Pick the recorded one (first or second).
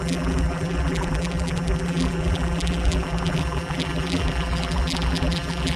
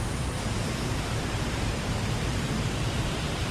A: second